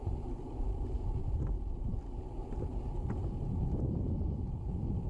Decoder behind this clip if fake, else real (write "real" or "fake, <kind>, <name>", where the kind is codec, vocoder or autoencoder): real